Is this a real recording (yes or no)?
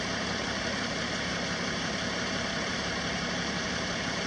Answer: no